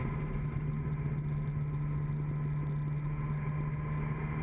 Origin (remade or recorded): recorded